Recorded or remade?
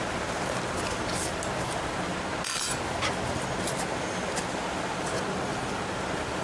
recorded